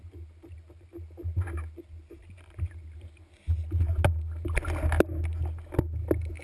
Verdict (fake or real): real